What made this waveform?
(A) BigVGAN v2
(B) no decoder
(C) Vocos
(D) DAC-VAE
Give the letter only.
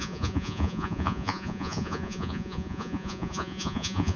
C